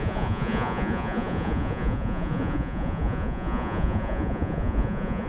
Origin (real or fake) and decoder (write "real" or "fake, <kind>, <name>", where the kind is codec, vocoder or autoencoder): fake, vocoder, Vocos